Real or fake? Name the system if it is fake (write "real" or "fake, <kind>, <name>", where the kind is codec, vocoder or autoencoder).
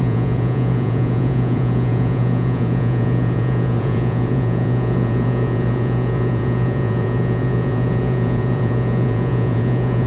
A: fake, vocoder, Vocos